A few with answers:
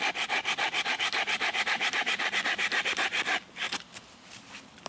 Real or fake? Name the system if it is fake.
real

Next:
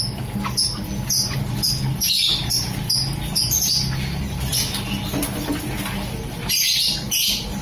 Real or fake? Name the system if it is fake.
real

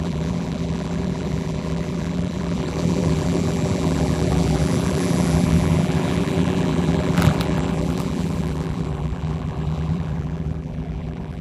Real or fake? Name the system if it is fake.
fake, vocoder, BigVGAN v2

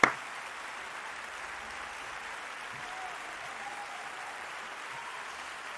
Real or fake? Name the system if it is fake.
real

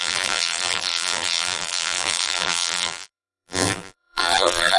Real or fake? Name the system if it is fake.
fake, vocoder, BigVGAN v2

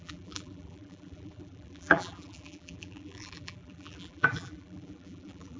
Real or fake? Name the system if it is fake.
fake, vocoder, BigVGAN v2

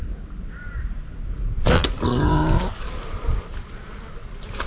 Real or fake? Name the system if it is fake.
real